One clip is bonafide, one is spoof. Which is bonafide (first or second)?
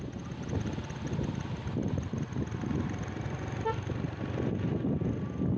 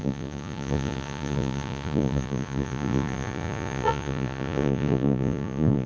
first